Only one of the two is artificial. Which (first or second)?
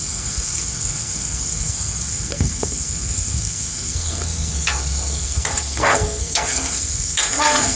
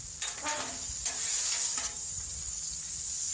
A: first